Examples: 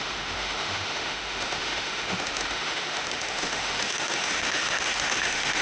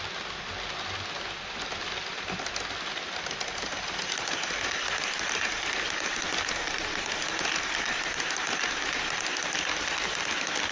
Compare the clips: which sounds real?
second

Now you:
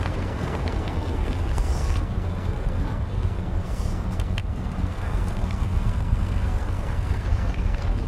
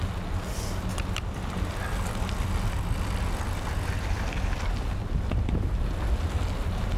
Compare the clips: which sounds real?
second